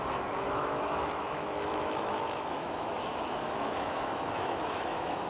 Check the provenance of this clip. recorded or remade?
remade